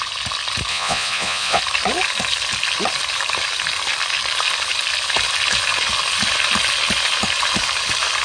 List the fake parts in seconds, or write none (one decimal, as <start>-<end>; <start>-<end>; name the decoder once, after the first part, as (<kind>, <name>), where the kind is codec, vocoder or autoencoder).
0.7-1.6 (vocoder, Vocos)